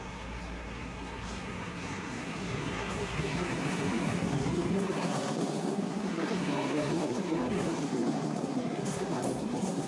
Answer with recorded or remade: remade